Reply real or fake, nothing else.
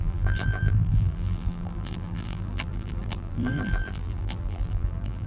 fake